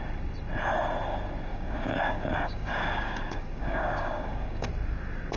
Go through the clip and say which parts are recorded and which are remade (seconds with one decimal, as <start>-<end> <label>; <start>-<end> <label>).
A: 0.0-1.5 recorded; 1.5-4.7 remade; 4.7-5.4 recorded